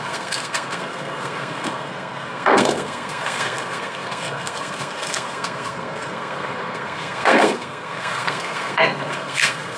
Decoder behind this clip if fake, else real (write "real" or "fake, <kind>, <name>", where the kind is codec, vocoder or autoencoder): fake, codec, SNAC